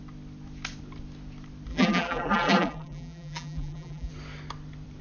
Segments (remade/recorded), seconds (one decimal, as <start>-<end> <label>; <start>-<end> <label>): 0.0-1.7 recorded; 1.7-4.1 remade; 4.1-5.0 recorded